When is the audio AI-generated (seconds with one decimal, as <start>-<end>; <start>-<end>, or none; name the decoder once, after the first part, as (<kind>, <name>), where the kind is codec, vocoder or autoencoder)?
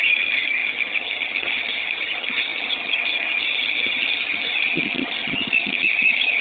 0.0-6.4 (vocoder, HiFi-GAN)